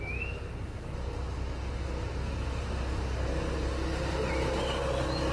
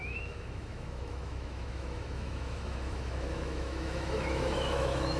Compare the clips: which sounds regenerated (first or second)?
second